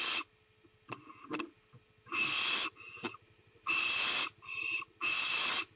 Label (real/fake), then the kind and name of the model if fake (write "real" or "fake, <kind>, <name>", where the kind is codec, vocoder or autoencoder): real